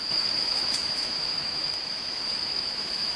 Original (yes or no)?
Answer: no